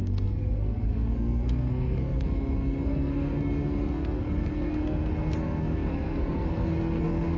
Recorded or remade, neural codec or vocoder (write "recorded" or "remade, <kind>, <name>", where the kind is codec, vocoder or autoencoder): remade, codec, SNAC